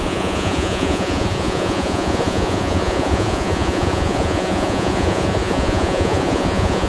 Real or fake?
fake